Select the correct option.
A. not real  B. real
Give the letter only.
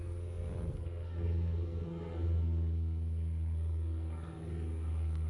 A